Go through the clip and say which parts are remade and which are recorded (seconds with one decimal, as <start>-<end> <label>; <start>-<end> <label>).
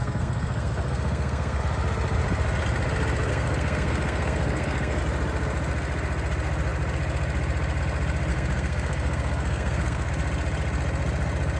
0.0-1.6 remade; 1.6-3.3 recorded; 3.3-5.0 remade; 5.0-8.3 recorded; 8.3-10.1 remade; 10.1-11.6 recorded